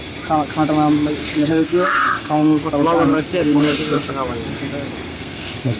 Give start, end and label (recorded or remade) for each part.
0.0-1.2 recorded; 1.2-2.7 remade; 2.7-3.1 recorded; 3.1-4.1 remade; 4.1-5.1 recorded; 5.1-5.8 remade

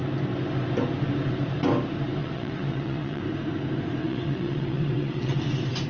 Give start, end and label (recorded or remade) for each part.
0.0-2.2 recorded; 2.2-3.2 remade; 3.2-4.0 recorded; 4.0-5.4 remade; 5.4-5.9 recorded

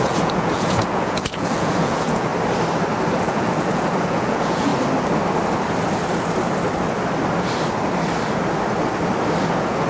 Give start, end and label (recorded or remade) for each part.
0.0-2.3 remade; 2.3-3.2 recorded; 3.2-4.7 remade; 4.7-9.4 recorded; 9.4-9.9 remade

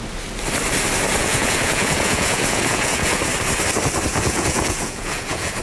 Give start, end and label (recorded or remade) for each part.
0.0-1.2 recorded; 1.2-3.2 remade; 3.2-4.1 recorded; 4.1-5.6 remade

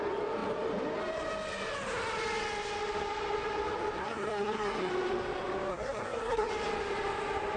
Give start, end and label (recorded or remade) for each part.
0.0-4.0 recorded; 4.0-4.9 remade; 4.9-5.7 recorded; 5.7-6.5 remade; 6.5-7.6 recorded